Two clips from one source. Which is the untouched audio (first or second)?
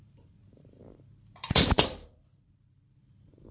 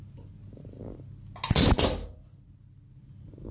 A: second